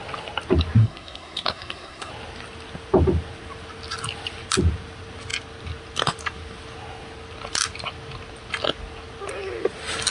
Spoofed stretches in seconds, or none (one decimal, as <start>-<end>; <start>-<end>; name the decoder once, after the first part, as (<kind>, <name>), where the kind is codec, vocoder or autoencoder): 0.8-2.1 (codec, SNAC)